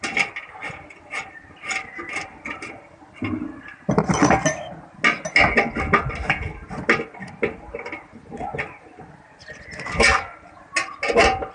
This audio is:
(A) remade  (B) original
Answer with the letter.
B